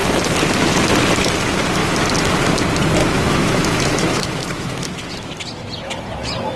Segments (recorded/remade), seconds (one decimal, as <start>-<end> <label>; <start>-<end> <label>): 0.0-3.0 recorded; 3.0-5.1 remade; 5.1-6.6 recorded

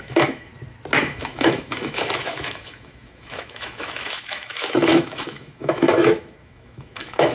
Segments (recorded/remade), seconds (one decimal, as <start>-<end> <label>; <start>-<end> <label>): 0.0-0.5 remade; 0.5-1.0 recorded; 1.0-7.3 remade

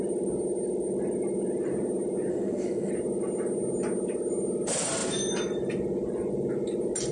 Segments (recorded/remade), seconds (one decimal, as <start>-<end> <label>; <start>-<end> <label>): 0.0-2.3 recorded; 2.3-2.9 remade; 2.9-7.1 recorded

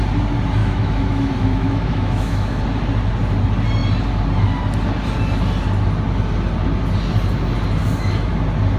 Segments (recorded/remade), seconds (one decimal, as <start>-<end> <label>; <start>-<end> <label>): 0.0-0.6 recorded; 0.6-2.6 remade; 2.6-8.8 recorded